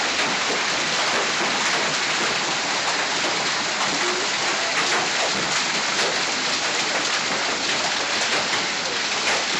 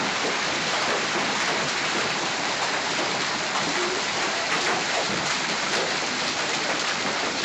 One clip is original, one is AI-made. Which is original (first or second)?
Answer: first